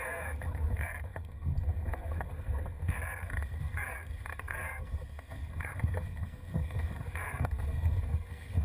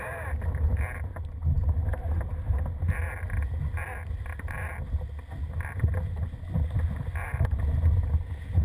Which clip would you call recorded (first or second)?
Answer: second